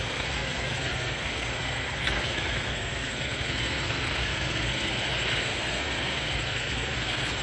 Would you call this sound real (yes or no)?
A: no